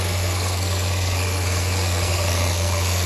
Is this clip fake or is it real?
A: fake